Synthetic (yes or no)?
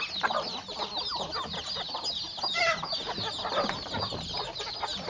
no